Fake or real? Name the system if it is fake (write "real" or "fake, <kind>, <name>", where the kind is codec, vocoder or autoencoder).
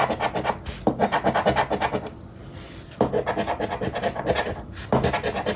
real